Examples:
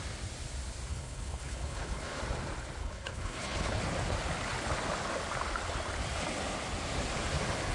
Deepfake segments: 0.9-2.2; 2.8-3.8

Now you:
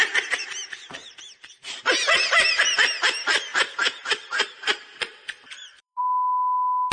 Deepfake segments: 1.0-2.7; 3.5-6.0

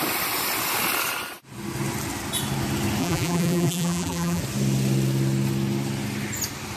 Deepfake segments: 3.0-4.4

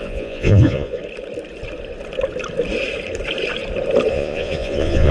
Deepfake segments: 0.0-1.0; 4.1-5.1